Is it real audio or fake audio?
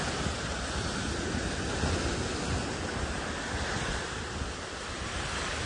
real